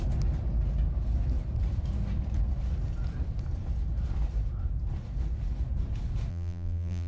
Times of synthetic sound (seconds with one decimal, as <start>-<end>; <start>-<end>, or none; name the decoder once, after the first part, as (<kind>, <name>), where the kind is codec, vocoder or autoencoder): 6.3-7.1 (vocoder, BigVGAN v2)